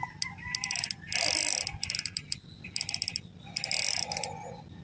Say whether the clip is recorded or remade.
recorded